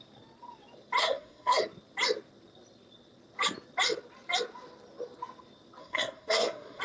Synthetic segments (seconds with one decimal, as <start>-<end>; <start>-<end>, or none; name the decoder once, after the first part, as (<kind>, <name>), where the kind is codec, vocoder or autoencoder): 1.0-1.6 (codec, SNAC); 5.8-6.8

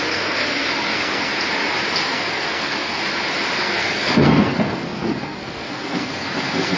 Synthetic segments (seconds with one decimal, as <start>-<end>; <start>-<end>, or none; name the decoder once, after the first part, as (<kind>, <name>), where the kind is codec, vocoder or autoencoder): 0.0-1.3 (codec, SNAC); 2.0-3.0; 3.6-6.8

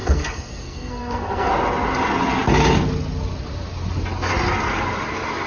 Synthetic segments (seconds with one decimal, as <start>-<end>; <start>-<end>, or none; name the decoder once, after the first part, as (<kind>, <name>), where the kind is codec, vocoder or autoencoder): 0.0-1.5 (codec, SNAC)

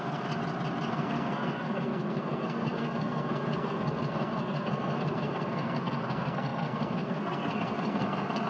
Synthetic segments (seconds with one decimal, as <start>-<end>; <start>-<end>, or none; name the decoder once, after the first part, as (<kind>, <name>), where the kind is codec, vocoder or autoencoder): 0.0-0.4 (codec, SNAC); 0.9-8.5

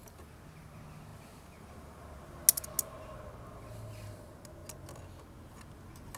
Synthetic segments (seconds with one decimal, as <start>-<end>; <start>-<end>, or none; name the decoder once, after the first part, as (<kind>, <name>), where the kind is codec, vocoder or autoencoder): none